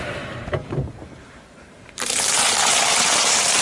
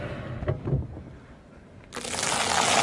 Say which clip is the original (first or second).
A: second